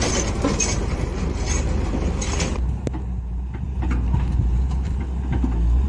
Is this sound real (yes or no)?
yes